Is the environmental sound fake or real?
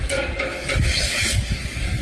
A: fake